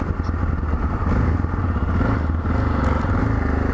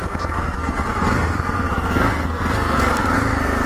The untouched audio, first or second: first